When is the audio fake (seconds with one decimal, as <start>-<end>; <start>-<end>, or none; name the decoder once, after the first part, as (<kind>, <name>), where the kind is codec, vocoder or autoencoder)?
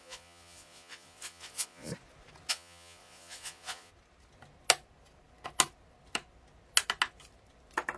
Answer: 0.0-1.9 (vocoder, Vocos); 2.5-3.9